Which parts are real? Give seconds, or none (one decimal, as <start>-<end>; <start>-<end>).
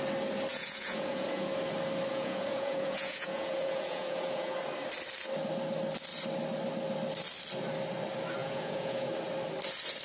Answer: 0.0-0.5; 1.5-2.1; 4.6-8.4; 9.1-10.0